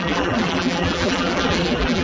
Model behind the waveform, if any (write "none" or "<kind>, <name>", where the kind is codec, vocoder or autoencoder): vocoder, BigVGAN v2